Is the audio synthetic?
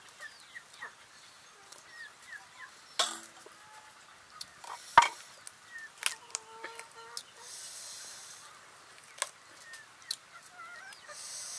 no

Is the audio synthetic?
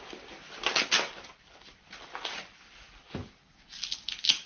no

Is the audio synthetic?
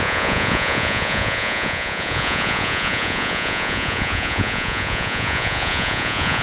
yes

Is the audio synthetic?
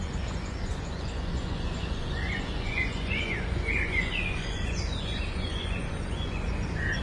yes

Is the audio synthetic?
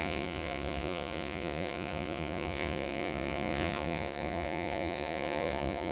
yes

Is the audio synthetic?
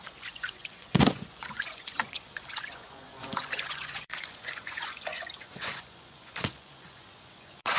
yes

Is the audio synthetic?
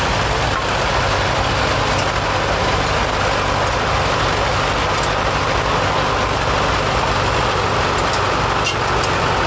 no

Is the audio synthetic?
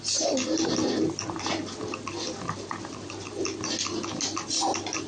no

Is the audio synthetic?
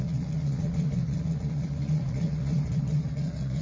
yes